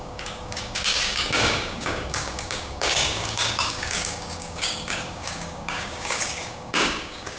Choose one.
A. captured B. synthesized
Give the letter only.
B